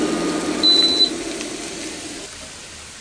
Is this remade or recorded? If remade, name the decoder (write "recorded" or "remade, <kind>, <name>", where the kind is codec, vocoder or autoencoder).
recorded